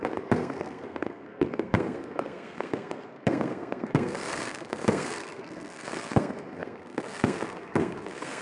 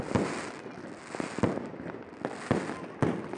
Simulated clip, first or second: first